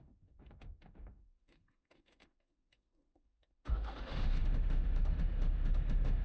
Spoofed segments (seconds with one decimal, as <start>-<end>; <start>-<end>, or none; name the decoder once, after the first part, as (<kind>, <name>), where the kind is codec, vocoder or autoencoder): 0.0-6.2 (autoencoder, DAC-VAE)